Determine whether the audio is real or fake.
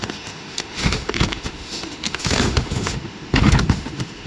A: fake